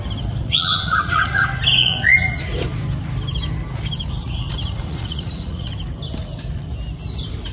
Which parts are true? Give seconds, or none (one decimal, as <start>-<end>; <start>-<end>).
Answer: 0.0-0.4; 1.4-1.8; 2.4-4.2; 5.7-7.5